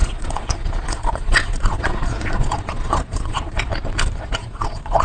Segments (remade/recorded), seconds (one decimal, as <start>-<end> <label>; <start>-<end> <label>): 0.0-3.7 remade; 3.7-4.3 recorded; 4.3-5.0 remade